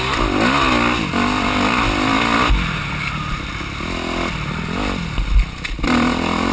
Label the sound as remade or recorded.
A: recorded